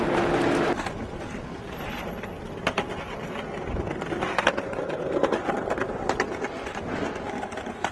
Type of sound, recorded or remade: recorded